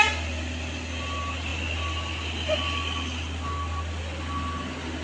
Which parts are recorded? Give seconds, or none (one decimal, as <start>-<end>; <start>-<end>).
0.0-5.0